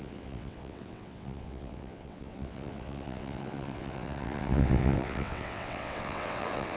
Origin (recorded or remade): remade